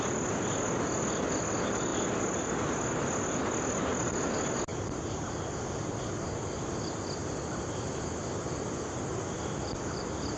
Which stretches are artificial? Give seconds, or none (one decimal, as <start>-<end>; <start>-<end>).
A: none